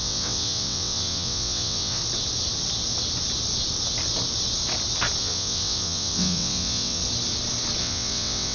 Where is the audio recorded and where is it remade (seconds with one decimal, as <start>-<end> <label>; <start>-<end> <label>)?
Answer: 0.0-2.0 remade; 2.0-5.2 recorded; 5.2-7.0 remade; 7.0-7.8 recorded; 7.8-8.5 remade